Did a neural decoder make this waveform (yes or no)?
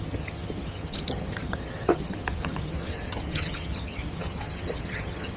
yes